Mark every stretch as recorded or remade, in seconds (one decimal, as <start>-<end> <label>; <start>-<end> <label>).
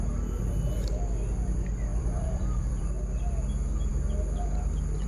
0.0-1.9 recorded; 1.9-2.8 remade; 2.8-5.1 recorded